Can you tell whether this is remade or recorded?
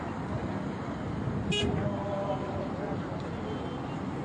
recorded